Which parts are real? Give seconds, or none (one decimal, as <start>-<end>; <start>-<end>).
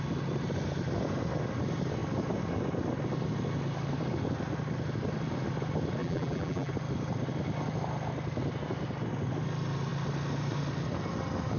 0.0-6.0; 6.7-11.6